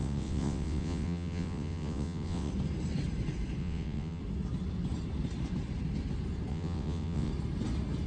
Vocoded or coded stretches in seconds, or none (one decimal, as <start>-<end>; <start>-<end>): 0.0-2.5; 3.6-4.2; 6.5-7.3